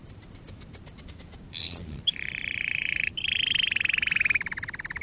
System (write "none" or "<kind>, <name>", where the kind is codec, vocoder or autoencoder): vocoder, BigVGAN v2